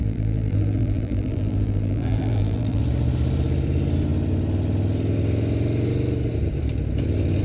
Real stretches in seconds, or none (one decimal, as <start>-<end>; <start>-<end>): 2.8-7.4